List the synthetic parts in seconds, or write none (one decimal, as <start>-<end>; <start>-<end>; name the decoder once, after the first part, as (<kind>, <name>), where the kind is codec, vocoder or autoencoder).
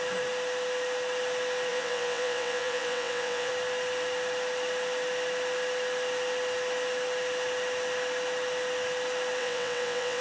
1.7-3.5 (vocoder, WaveNeXt); 9.4-10.2